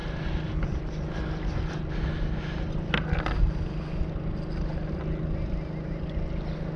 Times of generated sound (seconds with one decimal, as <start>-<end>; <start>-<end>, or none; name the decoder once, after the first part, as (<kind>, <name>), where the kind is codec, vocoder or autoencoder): none